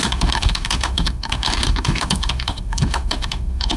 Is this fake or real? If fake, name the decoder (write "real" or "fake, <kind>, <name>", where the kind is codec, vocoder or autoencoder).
fake, autoencoder, DAC-VAE